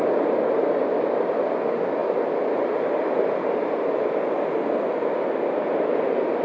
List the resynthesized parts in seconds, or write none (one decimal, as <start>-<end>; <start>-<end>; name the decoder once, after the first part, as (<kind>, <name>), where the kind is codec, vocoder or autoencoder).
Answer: none